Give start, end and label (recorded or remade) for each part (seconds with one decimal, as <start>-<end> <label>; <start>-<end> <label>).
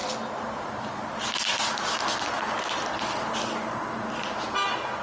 0.0-5.0 recorded